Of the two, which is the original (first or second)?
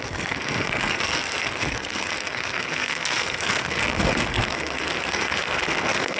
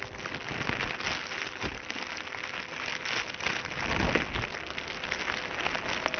second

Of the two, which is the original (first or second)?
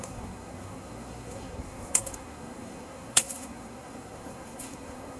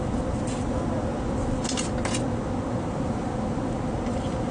second